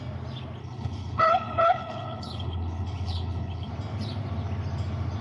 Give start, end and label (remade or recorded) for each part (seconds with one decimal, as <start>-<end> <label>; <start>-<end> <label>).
0.0-0.6 recorded; 0.6-3.7 remade; 3.7-5.2 recorded